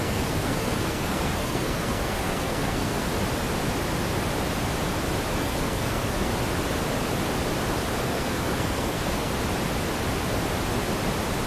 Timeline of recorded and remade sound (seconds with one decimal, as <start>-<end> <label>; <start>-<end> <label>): 0.0-3.1 remade; 3.1-5.4 recorded; 5.4-6.3 remade; 6.3-8.0 recorded; 8.0-9.3 remade; 9.3-11.5 recorded